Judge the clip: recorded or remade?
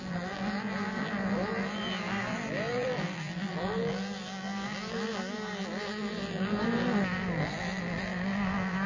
remade